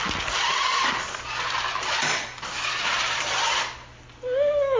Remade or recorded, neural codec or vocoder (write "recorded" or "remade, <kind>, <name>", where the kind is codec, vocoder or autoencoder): recorded